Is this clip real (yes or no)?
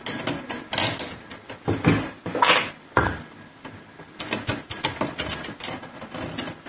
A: yes